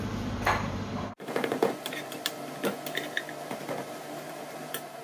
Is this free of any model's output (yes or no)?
no